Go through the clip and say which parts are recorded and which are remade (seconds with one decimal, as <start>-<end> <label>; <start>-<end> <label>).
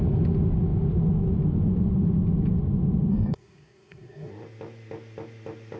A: 0.0-3.1 recorded; 3.1-4.3 remade; 4.3-5.8 recorded